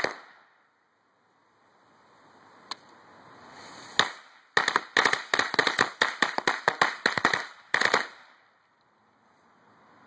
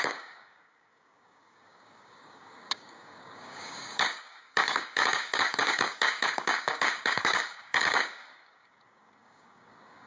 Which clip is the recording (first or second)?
first